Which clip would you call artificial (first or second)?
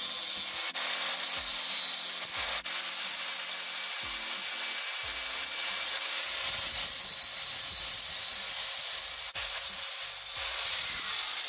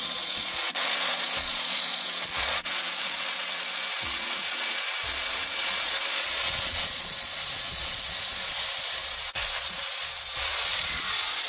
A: second